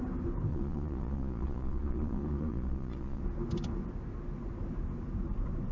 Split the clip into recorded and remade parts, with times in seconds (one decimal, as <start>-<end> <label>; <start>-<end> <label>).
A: 0.0-0.5 recorded; 0.5-3.2 remade; 3.2-5.7 recorded